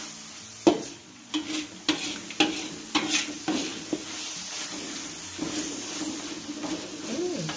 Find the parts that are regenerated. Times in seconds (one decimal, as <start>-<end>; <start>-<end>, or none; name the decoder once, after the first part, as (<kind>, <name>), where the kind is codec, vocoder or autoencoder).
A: 0.7-1.3 (vocoder, Vocos)